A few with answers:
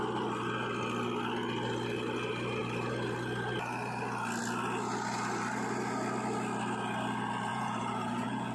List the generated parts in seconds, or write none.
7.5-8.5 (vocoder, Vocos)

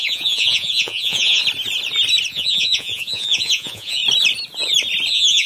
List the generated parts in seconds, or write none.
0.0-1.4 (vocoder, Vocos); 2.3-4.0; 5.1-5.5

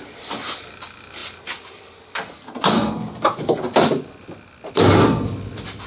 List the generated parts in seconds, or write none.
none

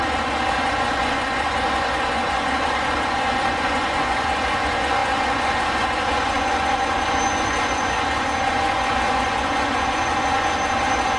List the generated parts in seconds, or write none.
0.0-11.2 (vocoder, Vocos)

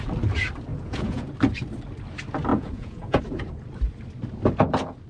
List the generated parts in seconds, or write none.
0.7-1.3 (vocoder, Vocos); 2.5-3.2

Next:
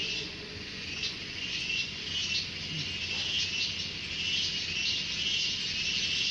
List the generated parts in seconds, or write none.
0.0-2.0 (vocoder, Vocos)

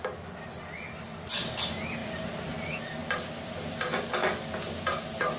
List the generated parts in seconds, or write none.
none

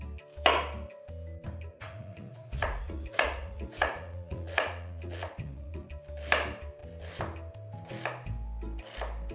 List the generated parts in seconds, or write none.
1.7-5.9 (vocoder, Vocos)